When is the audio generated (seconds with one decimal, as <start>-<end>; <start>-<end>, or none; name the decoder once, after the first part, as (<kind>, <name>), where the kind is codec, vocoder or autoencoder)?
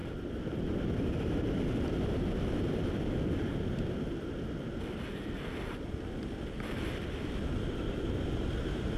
0.0-3.0 (vocoder, BigVGAN v2)